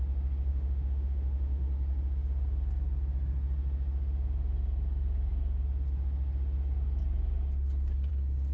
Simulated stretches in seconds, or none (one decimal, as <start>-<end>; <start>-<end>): 0.5-1.7